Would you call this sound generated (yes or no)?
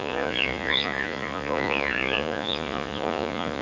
yes